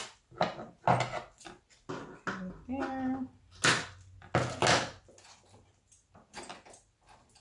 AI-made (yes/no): no